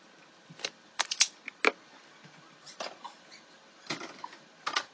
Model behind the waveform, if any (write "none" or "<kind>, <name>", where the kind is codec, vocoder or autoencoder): none